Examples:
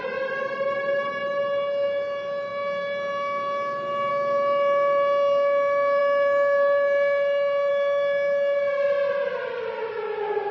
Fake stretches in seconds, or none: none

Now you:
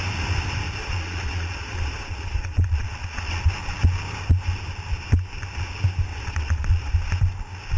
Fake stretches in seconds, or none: 0.8-3.4 (vocoder, Vocos); 6.1-6.9

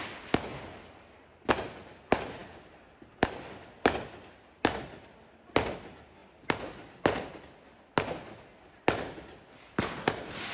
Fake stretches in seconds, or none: none

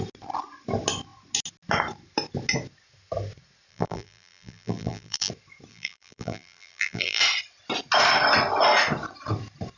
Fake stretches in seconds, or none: 3.7-5.3 (vocoder, BigVGAN v2); 5.7-7.2

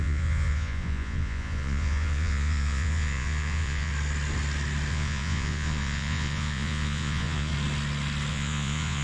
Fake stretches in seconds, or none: 0.0-3.9 (vocoder, Vocos); 4.9-7.5; 8.3-9.0

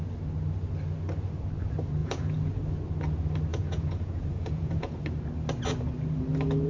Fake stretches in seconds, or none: 2.0-2.6 (vocoder, Vocos); 3.5-5.0

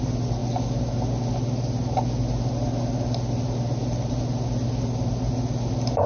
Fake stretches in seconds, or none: none

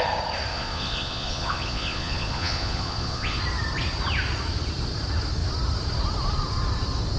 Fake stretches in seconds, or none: 0.5-3.4 (vocoder, Vocos)